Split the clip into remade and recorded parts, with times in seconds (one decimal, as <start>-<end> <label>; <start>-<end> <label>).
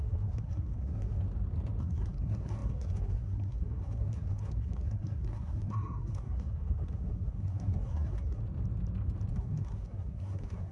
0.0-1.2 remade; 1.2-1.8 recorded; 1.8-8.4 remade; 8.4-9.3 recorded; 9.3-10.7 remade